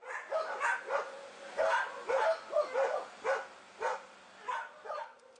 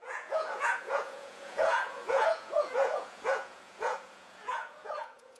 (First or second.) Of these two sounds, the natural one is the first